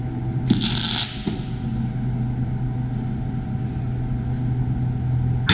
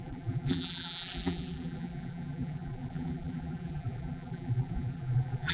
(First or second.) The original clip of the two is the first